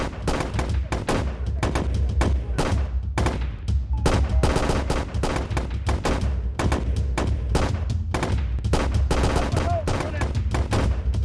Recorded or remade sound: recorded